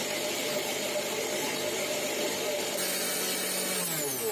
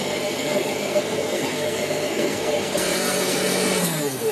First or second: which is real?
first